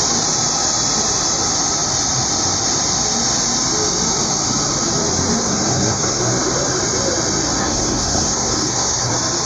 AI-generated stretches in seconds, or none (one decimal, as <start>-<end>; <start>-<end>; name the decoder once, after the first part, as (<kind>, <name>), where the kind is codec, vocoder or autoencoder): 5.4-6.2 (codec, SNAC); 7.6-9.1